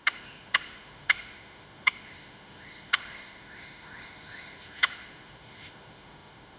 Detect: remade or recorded remade